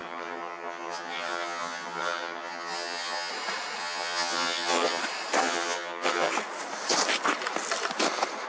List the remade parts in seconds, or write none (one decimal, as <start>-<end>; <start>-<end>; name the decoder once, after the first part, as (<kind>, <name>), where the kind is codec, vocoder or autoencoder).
0.0-3.3 (vocoder, HiFi-GAN); 3.8-5.0; 5.4-6.3